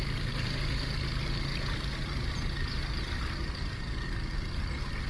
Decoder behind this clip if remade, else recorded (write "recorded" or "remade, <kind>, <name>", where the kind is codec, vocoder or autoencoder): recorded